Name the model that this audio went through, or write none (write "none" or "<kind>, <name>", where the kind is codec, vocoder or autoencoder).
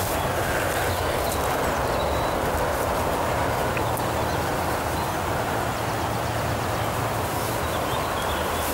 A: none